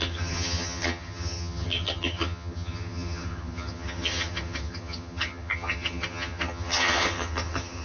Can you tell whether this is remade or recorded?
remade